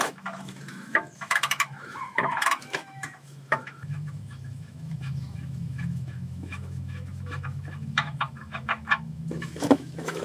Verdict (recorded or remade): remade